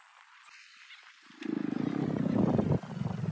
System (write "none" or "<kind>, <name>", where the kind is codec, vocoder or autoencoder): none